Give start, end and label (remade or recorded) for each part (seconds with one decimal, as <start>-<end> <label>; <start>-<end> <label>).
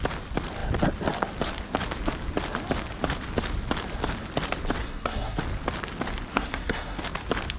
0.0-4.8 recorded; 4.8-5.4 remade; 5.4-6.3 recorded; 6.3-7.0 remade; 7.0-7.6 recorded